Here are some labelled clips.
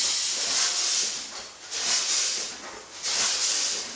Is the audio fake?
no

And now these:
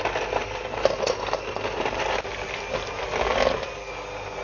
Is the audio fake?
no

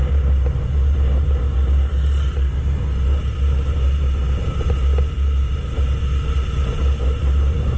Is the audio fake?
no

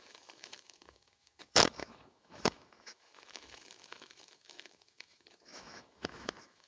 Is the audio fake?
yes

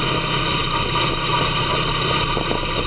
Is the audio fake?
no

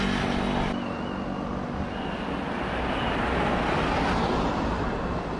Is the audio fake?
no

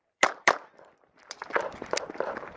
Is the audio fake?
yes